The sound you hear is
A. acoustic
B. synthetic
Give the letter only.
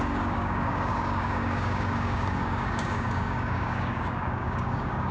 B